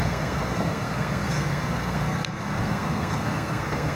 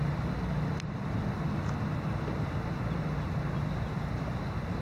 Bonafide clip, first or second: second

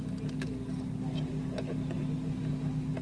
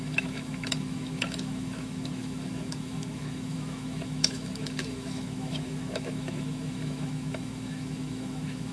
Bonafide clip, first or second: first